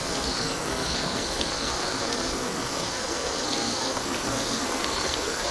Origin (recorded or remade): remade